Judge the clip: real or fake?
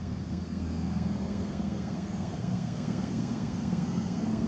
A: fake